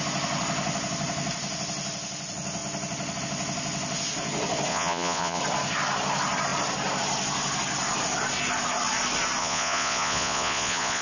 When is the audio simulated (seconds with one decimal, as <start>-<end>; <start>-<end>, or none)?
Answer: 4.7-5.4; 9.4-11.0